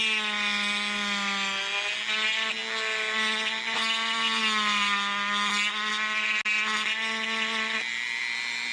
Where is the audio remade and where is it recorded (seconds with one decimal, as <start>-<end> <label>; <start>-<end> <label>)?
0.0-8.7 recorded